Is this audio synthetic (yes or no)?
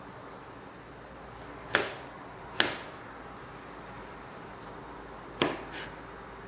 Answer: no